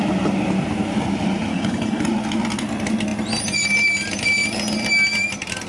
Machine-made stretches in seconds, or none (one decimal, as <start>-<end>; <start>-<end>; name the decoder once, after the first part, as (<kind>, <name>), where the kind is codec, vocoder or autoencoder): 1.5-2.0 (codec, HILCodec)

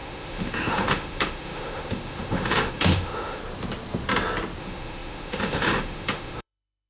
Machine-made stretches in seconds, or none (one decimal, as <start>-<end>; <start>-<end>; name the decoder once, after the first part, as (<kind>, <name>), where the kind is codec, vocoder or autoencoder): 0.0-3.4 (autoencoder, DAC-VAE); 4.6-6.9

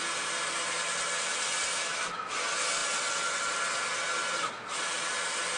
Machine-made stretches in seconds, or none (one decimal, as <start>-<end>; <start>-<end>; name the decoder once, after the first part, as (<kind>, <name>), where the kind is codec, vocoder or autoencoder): none